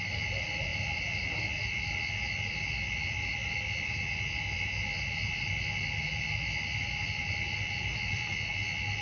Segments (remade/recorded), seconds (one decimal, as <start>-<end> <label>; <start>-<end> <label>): 0.0-0.7 recorded; 0.7-2.0 remade; 2.0-3.4 recorded; 3.4-4.1 remade; 4.1-9.0 recorded